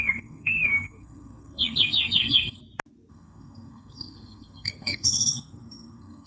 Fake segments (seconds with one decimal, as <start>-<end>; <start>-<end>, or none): 0.0-2.6; 3.1-6.3